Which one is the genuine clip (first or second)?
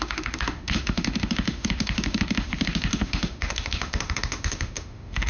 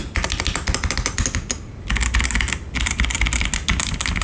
second